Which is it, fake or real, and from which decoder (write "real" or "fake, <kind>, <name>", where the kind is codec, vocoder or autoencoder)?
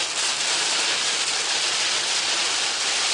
real